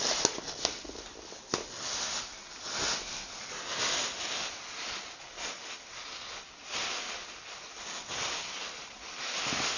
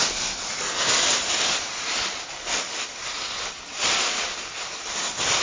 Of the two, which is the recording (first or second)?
first